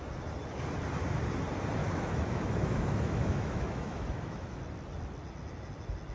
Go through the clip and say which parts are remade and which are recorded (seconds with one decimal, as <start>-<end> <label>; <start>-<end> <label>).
0.0-1.8 recorded; 1.8-4.6 remade; 4.6-6.1 recorded